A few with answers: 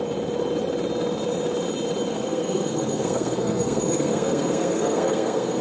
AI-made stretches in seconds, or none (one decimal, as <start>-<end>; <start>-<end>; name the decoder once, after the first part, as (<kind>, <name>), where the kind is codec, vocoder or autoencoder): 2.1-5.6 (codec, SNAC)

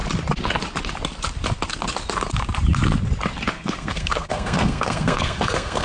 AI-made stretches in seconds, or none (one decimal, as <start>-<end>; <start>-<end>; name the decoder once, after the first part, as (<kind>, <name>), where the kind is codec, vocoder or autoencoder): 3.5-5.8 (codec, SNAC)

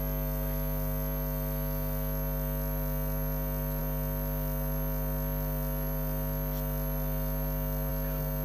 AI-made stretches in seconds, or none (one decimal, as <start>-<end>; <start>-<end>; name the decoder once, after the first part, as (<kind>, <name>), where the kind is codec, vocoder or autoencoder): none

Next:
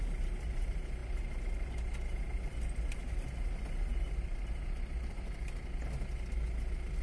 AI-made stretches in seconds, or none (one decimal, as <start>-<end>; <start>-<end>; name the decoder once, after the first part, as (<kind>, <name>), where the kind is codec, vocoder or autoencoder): none